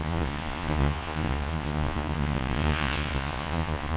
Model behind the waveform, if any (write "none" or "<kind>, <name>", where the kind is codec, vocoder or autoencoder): vocoder, Vocos